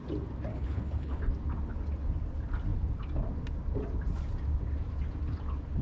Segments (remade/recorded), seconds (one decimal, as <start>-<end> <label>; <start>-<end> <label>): 0.0-0.5 recorded; 0.5-1.2 remade; 1.2-5.8 recorded